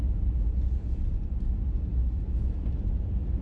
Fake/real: real